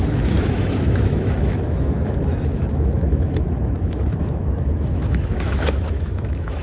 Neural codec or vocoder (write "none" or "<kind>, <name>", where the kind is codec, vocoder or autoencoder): autoencoder, DAC-VAE